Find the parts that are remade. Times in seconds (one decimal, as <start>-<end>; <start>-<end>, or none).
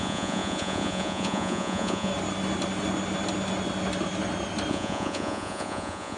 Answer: 0.0-2.1; 4.7-6.2